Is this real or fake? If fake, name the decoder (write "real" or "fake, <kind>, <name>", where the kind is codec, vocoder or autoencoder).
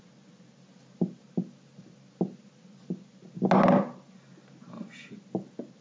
real